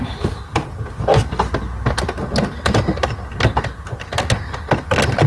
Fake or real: real